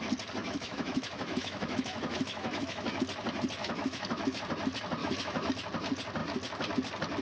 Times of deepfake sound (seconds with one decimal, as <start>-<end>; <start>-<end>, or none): 0.4-2.9; 3.6-4.4; 5.0-5.5